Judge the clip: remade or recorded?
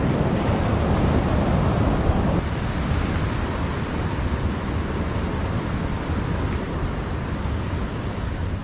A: recorded